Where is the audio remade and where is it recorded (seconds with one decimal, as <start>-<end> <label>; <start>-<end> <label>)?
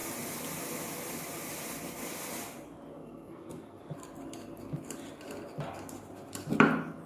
0.0-2.9 recorded; 2.9-3.8 remade; 3.8-7.1 recorded